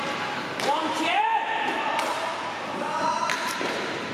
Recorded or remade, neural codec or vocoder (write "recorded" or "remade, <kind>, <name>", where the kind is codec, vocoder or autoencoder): remade, vocoder, BigVGAN v2